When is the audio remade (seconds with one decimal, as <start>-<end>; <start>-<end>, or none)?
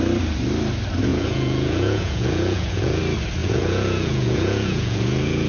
1.1-3.0; 3.4-5.5